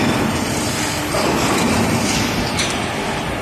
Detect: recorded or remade recorded